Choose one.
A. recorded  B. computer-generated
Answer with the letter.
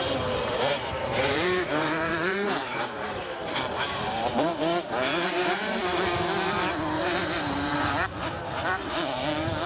B